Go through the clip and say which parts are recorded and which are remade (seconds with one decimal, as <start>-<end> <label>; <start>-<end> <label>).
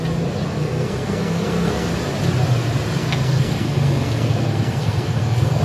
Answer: 0.0-0.5 recorded; 0.5-1.9 remade; 1.9-3.0 recorded; 3.0-5.6 remade